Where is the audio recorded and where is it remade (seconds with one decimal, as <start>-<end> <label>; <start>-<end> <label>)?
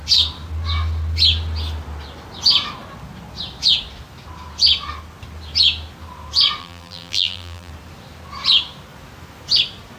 0.0-6.6 recorded; 6.6-7.7 remade; 7.7-10.0 recorded